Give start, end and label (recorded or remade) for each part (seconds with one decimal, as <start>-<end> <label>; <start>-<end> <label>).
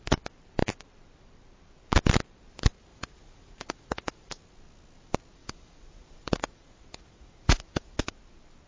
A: 0.0-2.9 recorded; 2.9-4.4 remade; 4.4-5.4 recorded; 5.4-8.0 remade; 8.0-8.7 recorded